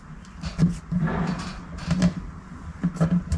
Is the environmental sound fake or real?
real